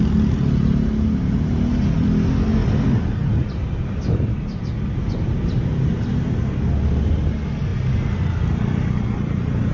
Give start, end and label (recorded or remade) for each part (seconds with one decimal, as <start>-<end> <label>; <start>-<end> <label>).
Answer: 0.0-9.7 recorded